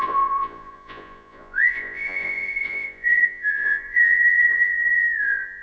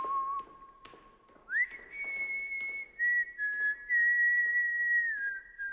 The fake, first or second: first